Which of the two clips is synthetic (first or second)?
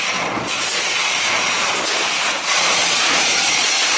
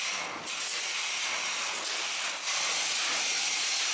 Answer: first